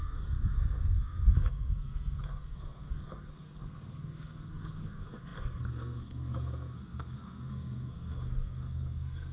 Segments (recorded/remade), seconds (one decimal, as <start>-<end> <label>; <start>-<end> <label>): 0.0-9.3 remade